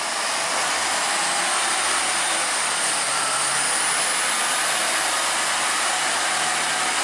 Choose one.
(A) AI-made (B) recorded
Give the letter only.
B